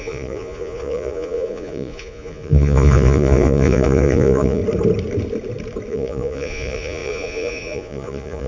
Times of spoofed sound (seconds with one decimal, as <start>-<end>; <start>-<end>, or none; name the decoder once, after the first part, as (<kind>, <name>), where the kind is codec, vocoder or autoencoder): 0.0-4.6 (vocoder, Vocos); 5.9-8.5

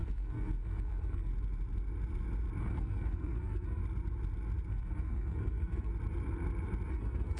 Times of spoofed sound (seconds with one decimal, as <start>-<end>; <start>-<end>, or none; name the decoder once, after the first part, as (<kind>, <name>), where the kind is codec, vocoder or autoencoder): 0.0-1.3 (codec, SNAC); 2.6-3.8; 4.7-5.9; 6.9-7.4

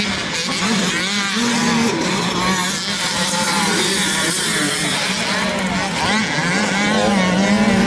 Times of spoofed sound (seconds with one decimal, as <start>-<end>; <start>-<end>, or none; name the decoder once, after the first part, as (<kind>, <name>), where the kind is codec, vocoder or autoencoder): none

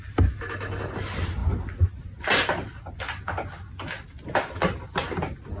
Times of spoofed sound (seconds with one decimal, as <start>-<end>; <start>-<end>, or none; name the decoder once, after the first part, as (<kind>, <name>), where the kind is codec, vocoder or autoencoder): none

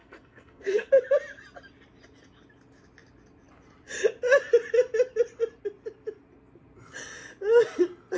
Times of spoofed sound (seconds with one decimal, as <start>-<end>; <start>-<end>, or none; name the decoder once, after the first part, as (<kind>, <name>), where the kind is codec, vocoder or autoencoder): 0.0-0.9 (codec, SNAC)

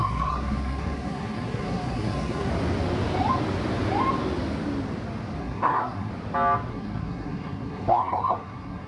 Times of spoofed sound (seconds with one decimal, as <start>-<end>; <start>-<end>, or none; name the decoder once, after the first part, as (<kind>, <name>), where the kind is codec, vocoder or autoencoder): 0.0-2.5 (codec, SNAC); 5.4-6.1; 6.7-8.9